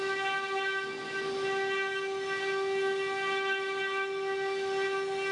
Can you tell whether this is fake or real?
real